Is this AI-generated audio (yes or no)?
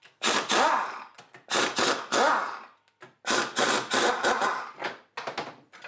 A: no